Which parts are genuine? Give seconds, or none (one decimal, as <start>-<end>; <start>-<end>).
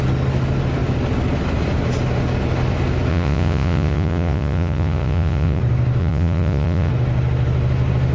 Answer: 0.0-3.1; 5.6-6.0; 6.9-8.1